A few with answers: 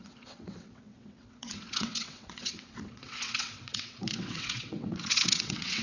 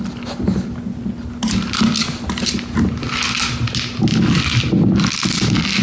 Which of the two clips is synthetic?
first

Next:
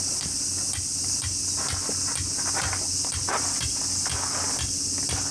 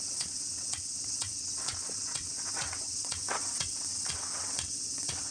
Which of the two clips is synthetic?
second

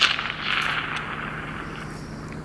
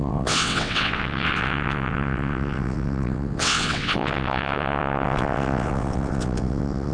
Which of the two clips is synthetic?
second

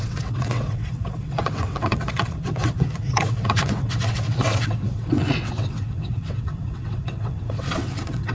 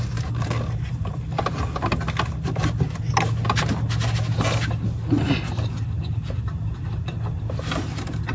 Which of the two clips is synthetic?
first